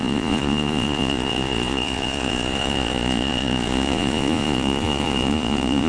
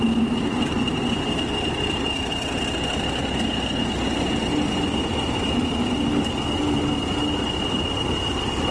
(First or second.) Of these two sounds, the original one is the second